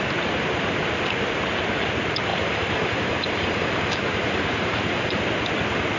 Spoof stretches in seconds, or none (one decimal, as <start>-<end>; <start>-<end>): 2.3-5.2